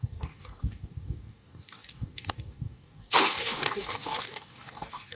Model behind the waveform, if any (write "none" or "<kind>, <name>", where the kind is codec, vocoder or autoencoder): codec, DAC